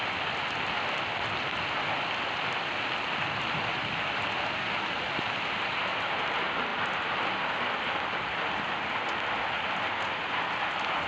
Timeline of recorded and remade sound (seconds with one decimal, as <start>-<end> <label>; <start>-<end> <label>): 0.0-11.1 recorded